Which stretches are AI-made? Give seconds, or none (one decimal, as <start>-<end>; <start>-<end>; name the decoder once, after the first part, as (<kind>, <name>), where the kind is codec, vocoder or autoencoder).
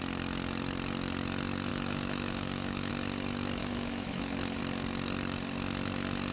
1.7-2.9 (autoencoder, DAC-VAE); 3.6-4.6